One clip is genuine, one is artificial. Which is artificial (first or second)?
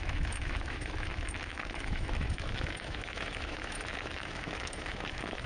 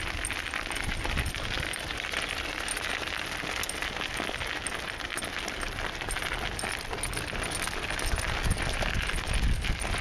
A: first